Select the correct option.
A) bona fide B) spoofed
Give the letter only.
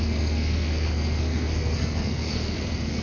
B